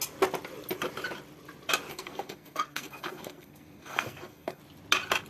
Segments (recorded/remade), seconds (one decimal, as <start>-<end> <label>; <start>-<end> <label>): 0.0-1.9 recorded; 1.9-4.6 remade; 4.6-5.3 recorded